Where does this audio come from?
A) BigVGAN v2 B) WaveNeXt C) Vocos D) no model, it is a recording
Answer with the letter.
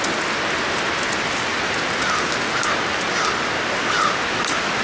D